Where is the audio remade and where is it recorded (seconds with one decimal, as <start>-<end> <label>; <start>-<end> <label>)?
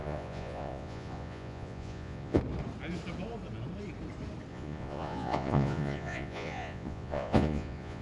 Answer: 0.0-2.4 remade; 2.4-4.5 recorded; 4.5-8.0 remade